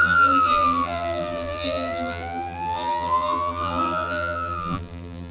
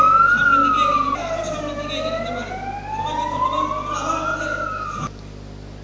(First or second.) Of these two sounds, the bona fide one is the second